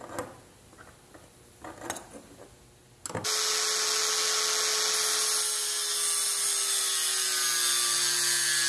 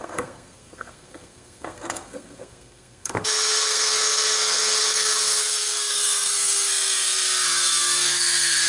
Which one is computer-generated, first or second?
second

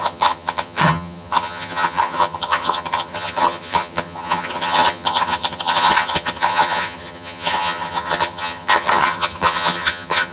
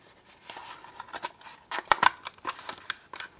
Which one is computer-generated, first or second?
first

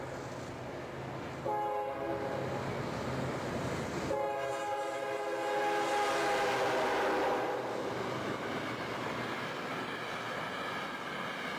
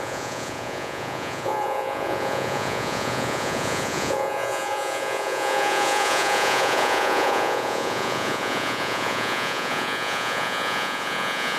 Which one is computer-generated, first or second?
second